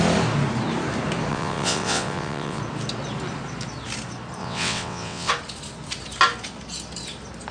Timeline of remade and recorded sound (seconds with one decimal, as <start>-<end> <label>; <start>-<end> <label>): 0.0-1.3 recorded; 1.3-2.6 remade; 2.6-4.4 recorded; 4.4-5.3 remade; 5.3-7.5 recorded